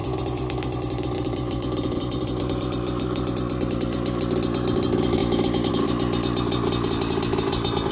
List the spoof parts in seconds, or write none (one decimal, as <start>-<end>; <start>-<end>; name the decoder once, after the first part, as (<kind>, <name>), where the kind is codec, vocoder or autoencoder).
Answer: none